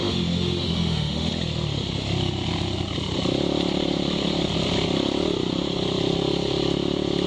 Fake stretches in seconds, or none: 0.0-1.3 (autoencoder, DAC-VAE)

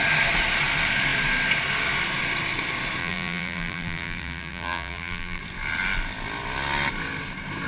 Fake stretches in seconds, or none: 3.0-5.4 (vocoder, BigVGAN v2)

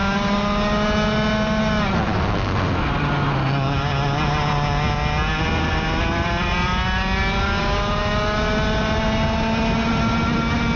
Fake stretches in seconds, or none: none

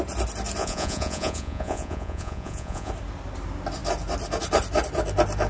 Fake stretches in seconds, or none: 0.6-2.9 (vocoder, Vocos)